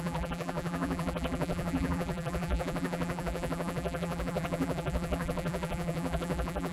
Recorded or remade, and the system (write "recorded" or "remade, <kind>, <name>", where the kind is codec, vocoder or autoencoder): remade, vocoder, BigVGAN v2